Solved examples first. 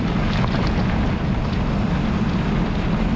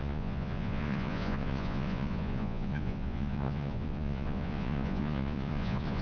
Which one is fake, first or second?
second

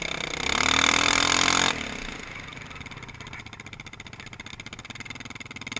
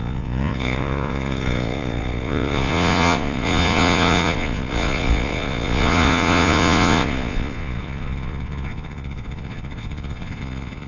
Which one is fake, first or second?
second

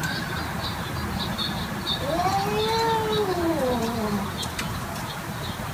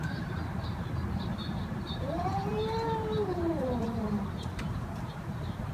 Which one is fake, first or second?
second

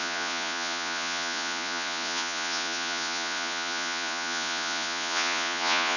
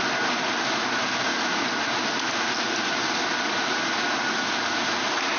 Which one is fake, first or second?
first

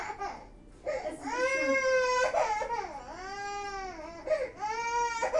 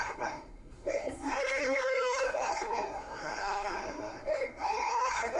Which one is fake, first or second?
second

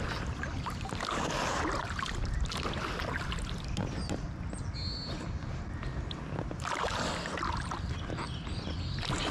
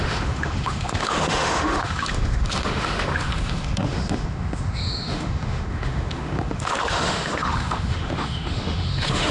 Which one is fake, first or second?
second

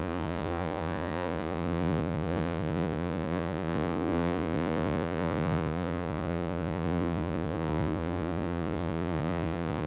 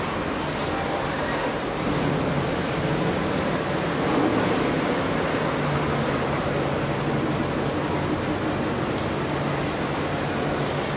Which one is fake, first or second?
first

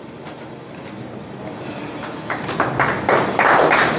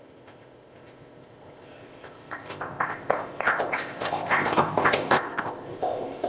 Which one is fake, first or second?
second